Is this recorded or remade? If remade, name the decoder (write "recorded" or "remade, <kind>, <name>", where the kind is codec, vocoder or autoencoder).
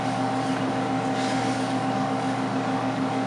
remade, codec, DAC